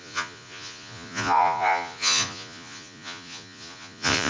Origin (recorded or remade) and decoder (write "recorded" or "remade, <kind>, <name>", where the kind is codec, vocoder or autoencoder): remade, vocoder, Vocos